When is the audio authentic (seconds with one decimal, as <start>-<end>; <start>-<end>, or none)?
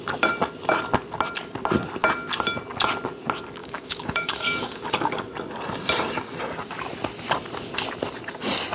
0.0-3.6; 5.3-8.7